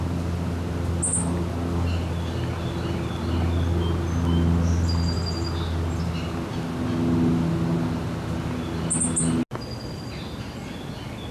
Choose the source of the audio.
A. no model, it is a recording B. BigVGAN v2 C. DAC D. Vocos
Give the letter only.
A